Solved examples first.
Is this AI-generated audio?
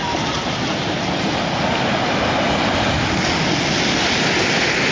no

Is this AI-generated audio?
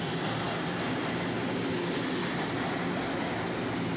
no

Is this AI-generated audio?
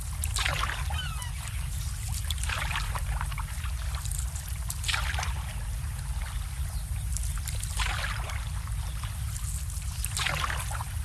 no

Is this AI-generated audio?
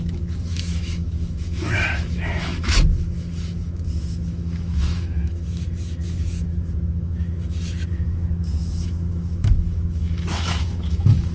yes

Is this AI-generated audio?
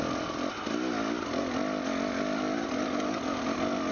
no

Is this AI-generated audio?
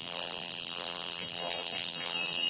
yes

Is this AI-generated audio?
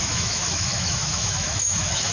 yes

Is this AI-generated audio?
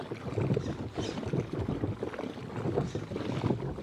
no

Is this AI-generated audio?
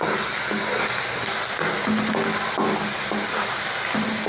no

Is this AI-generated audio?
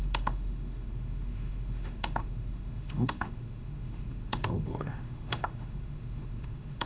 yes